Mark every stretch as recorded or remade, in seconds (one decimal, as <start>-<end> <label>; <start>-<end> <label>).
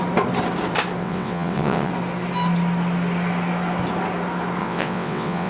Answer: 0.0-1.0 recorded; 1.0-1.9 remade; 1.9-4.6 recorded; 4.6-5.5 remade